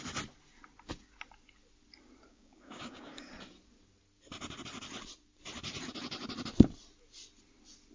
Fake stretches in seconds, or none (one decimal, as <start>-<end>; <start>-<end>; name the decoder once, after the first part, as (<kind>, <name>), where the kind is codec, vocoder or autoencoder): 2.3-3.3 (codec, DAC)